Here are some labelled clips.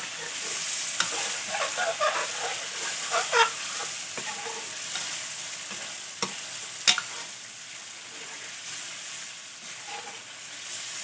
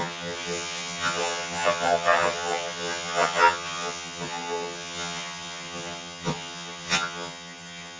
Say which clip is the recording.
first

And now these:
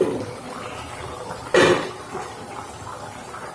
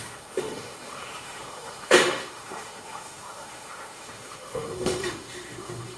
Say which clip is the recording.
first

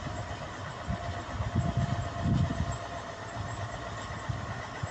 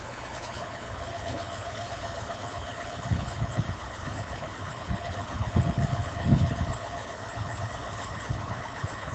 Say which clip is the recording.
first